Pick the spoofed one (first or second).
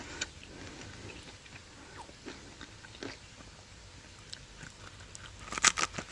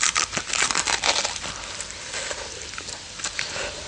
second